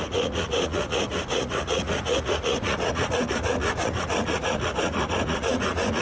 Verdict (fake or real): fake